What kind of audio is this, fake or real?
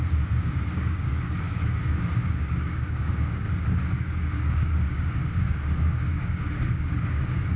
fake